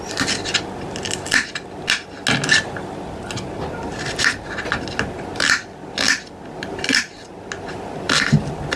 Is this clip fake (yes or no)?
no